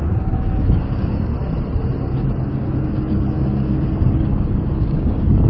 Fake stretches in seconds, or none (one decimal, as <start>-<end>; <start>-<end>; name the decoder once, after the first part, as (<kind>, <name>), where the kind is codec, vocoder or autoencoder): 0.0-1.3 (codec, DAC); 2.0-5.5